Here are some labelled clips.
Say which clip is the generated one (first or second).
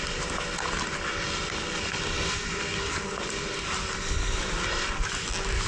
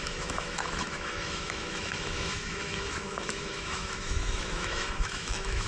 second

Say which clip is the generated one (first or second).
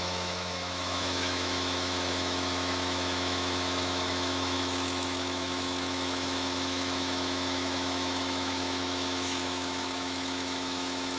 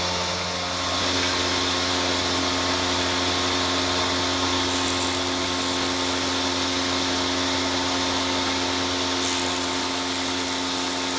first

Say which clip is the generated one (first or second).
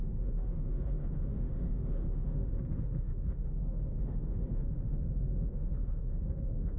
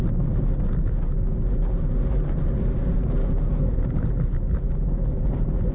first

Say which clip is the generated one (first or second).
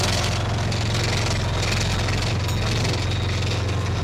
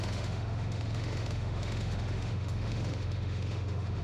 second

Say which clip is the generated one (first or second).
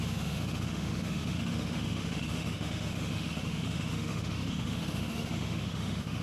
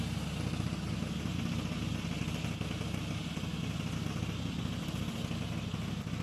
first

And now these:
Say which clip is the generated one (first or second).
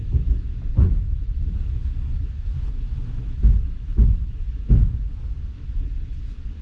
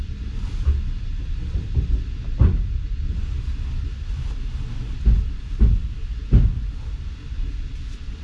first